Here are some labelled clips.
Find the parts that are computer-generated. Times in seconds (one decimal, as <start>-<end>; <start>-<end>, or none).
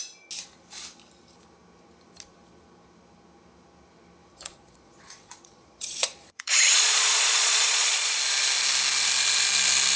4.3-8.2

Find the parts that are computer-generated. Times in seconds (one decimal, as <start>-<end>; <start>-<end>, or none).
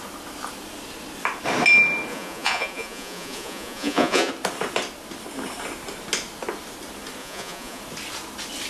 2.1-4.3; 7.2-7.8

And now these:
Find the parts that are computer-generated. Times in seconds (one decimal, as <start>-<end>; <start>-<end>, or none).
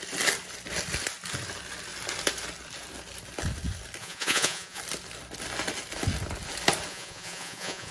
4.0-4.8; 6.9-7.9